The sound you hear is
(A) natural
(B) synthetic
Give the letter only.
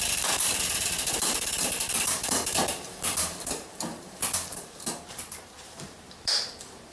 B